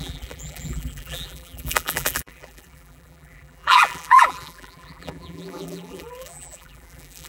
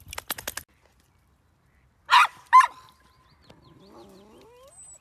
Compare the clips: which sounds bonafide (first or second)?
second